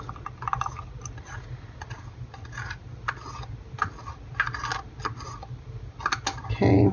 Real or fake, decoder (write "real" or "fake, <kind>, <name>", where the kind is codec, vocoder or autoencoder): real